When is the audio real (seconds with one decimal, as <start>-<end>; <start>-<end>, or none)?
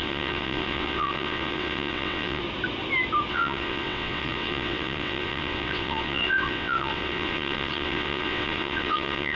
2.4-3.3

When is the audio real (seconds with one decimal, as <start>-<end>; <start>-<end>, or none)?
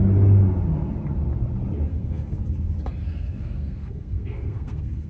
0.0-1.9; 2.4-3.0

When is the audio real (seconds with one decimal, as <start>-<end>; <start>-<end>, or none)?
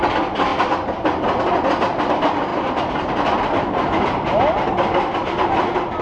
0.0-6.0